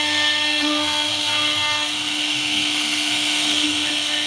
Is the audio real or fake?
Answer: fake